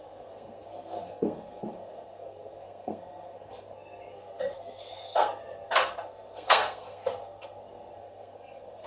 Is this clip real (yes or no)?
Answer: no